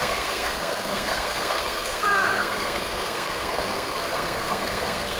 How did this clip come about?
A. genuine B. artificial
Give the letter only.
B